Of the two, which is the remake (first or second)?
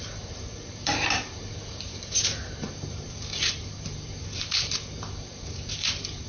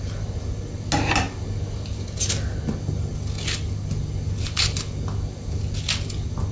first